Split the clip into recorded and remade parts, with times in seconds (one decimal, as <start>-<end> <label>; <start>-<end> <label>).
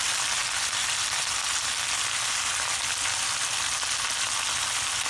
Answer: 0.0-5.1 recorded